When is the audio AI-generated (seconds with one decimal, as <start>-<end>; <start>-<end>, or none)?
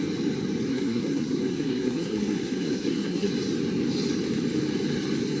0.7-3.3